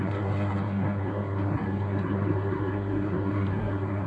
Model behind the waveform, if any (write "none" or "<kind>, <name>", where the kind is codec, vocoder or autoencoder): codec, SNAC